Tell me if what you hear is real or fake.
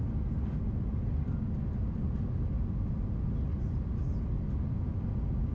real